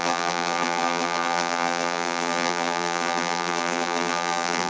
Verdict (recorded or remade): remade